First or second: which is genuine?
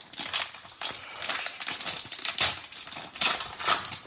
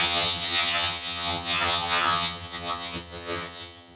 first